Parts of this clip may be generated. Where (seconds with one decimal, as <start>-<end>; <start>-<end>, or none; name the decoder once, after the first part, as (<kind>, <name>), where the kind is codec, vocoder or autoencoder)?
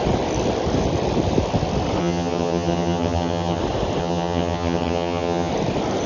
2.0-3.6 (vocoder, HiFi-GAN); 4.0-5.5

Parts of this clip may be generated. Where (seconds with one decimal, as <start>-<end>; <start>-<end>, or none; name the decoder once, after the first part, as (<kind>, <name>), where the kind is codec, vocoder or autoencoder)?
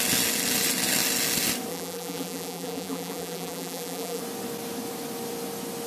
1.7-4.2 (vocoder, BigVGAN v2)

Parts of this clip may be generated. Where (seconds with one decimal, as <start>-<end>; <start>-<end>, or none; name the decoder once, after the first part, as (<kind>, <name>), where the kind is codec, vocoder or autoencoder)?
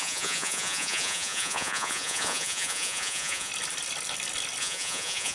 0.0-3.5 (vocoder, Vocos); 4.6-5.3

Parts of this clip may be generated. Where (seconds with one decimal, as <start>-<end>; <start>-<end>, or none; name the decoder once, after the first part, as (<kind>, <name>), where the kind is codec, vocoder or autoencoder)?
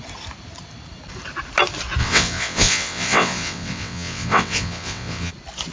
2.0-5.3 (vocoder, WaveNeXt)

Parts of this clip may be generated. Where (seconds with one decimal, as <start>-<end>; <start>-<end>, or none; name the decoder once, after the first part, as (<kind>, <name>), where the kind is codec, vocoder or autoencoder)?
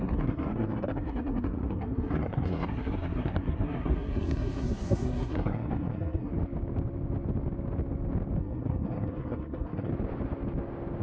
0.0-6.3 (codec, SNAC); 8.4-9.9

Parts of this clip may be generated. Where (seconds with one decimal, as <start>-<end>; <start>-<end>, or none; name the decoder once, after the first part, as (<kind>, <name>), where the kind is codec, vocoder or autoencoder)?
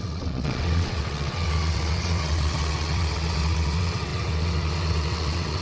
0.0-5.6 (vocoder, WaveNeXt)